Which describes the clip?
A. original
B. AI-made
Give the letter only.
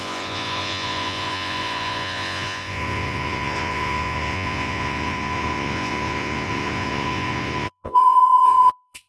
B